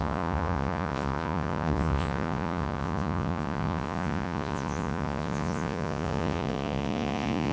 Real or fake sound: fake